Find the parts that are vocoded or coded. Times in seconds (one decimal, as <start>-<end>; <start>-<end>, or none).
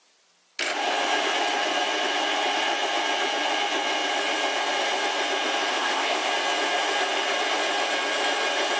5.7-6.3